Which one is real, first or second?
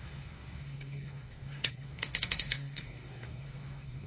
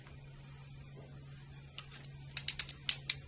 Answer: second